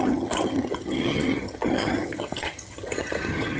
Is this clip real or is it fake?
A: fake